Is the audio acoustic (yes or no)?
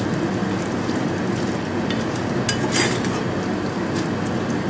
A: yes